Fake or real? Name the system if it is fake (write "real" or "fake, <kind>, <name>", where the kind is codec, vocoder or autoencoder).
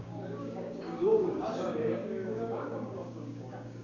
fake, codec, DAC